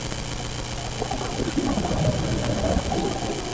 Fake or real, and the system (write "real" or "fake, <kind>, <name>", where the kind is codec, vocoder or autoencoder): real